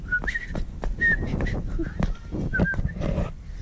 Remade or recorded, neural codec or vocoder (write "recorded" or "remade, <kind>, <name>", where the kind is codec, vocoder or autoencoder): recorded